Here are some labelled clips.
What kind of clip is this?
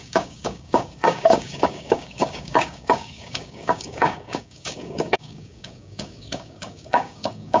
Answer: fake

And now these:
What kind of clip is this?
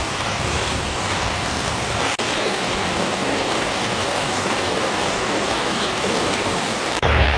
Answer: fake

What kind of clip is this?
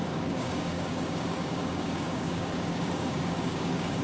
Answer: fake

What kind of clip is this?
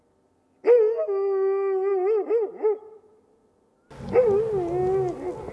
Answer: real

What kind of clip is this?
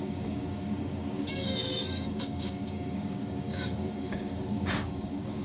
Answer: fake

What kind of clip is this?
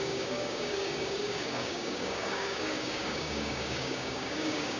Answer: fake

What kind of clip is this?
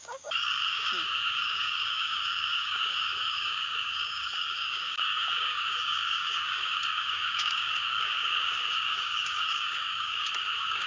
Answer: fake